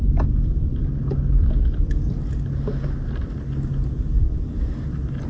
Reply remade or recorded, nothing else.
recorded